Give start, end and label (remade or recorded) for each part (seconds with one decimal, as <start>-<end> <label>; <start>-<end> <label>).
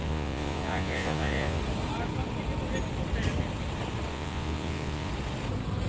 0.0-1.6 remade; 1.6-4.1 recorded; 4.1-5.1 remade; 5.1-5.9 recorded